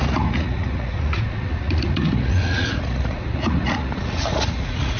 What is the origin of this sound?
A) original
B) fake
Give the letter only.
B